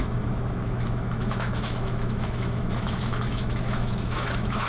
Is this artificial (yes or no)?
yes